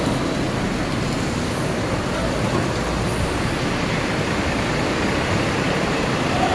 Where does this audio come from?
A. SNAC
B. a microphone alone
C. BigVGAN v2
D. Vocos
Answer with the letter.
B